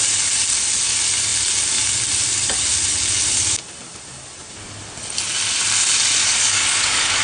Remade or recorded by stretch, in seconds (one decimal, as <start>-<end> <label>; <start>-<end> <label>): 0.0-6.2 recorded; 6.2-7.2 remade

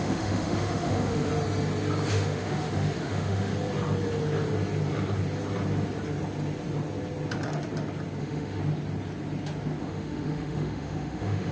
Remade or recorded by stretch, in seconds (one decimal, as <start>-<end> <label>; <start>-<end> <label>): 0.0-1.3 remade; 1.3-2.1 recorded; 2.1-3.5 remade; 3.5-8.2 recorded; 8.2-8.6 remade; 8.6-9.8 recorded; 9.8-11.5 remade